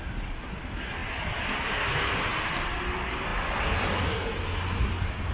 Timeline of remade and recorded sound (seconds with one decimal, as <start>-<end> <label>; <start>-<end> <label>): 0.0-5.3 recorded